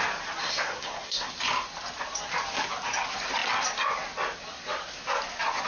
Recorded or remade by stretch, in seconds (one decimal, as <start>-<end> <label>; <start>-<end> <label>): 0.0-0.4 recorded; 0.4-1.3 remade; 1.3-5.7 recorded